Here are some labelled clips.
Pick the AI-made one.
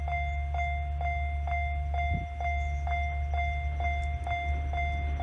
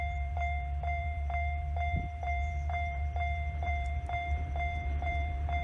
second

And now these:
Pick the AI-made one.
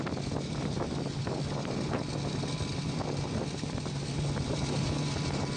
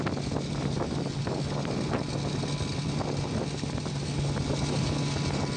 first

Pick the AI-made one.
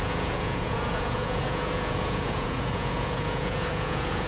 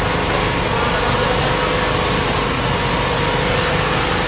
first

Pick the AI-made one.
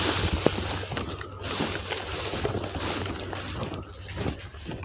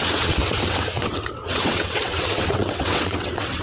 second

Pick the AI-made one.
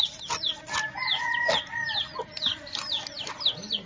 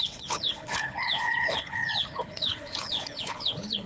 second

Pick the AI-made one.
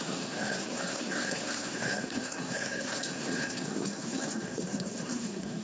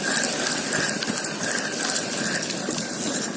first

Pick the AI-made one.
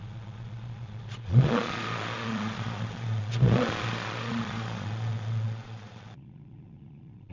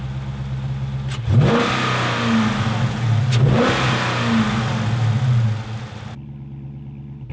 first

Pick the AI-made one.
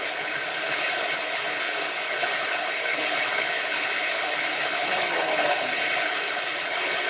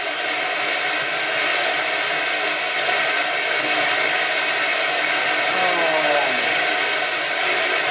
first